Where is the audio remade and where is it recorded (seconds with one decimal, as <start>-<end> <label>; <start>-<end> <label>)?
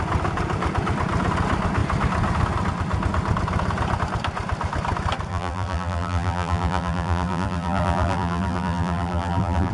0.0-5.3 recorded; 5.3-9.7 remade